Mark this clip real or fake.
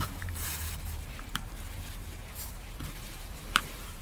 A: fake